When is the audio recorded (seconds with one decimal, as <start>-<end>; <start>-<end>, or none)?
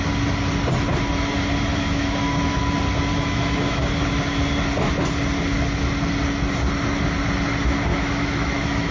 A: 0.0-1.7; 2.6-3.1; 4.1-7.9